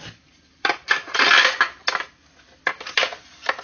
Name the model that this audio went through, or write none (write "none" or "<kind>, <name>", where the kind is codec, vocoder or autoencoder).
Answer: none